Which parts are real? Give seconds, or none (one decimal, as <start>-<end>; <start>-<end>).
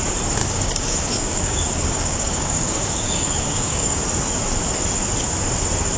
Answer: 0.0-0.4; 4.0-6.0